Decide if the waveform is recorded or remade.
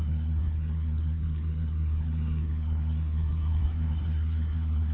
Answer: remade